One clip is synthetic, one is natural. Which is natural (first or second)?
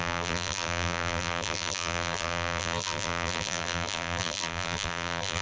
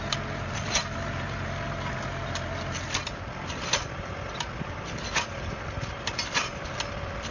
second